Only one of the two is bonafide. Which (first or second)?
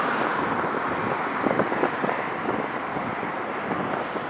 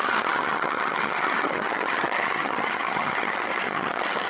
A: first